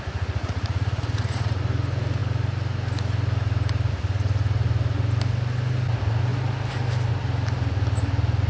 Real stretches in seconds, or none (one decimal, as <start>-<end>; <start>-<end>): 0.0-0.4; 1.6-8.5